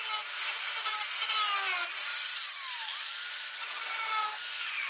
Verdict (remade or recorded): recorded